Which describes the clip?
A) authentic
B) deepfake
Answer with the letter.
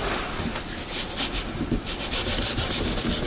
A